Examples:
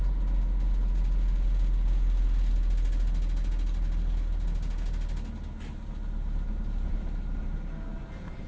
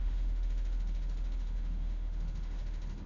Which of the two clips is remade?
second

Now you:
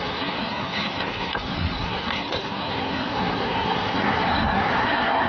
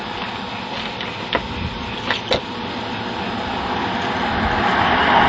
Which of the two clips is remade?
first